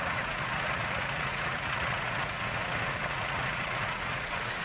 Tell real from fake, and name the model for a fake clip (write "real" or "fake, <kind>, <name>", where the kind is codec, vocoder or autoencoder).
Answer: fake, vocoder, Vocos